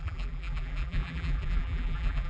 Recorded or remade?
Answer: remade